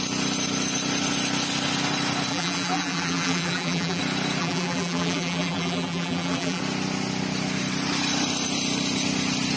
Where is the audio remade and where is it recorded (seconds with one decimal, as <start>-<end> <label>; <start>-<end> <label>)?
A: 0.0-2.3 recorded; 2.3-4.0 remade; 4.0-4.4 recorded; 4.4-6.6 remade; 6.6-9.6 recorded